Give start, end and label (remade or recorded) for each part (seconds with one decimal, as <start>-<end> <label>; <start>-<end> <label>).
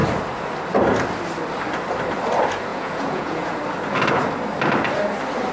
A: 0.0-2.7 recorded; 2.7-3.6 remade; 3.6-5.5 recorded